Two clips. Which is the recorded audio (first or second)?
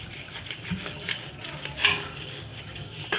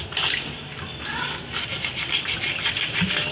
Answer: second